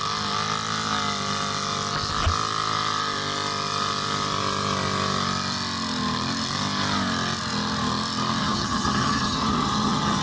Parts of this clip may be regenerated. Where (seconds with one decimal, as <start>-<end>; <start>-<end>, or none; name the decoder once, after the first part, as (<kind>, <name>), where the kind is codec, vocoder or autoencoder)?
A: 8.4-10.2 (vocoder, HiFi-GAN)